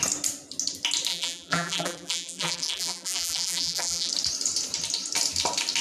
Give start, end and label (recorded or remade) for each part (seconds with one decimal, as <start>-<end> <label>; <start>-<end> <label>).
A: 0.0-1.1 recorded; 1.1-4.1 remade; 4.1-5.8 recorded